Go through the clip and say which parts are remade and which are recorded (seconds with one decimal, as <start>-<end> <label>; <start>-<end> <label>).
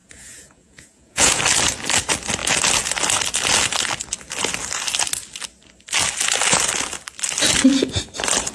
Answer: 0.0-1.4 remade; 1.4-8.5 recorded